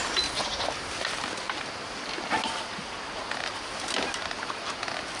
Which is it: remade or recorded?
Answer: recorded